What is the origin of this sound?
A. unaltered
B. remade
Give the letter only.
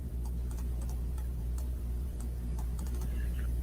B